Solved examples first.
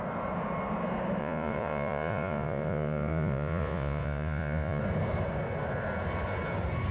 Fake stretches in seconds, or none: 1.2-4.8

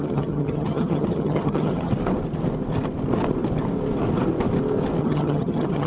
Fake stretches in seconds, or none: 0.0-1.9; 5.0-5.9

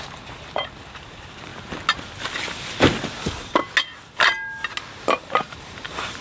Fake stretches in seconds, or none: 0.0-1.5; 5.1-6.2

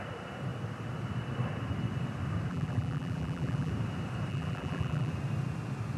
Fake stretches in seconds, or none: 2.5-3.7; 4.3-5.1

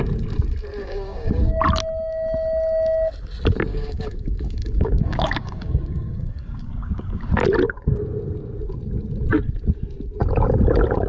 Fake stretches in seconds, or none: 0.8-1.4; 3.7-7.2